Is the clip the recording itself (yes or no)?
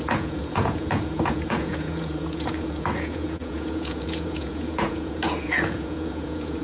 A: no